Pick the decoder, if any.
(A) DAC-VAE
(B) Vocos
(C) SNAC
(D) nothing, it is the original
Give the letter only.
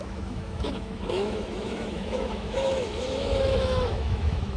A